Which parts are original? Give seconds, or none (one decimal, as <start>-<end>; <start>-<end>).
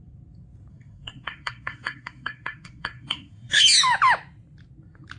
0.0-0.7; 3.6-5.2